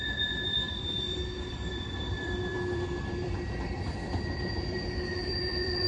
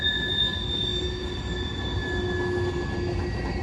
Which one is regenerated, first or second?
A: first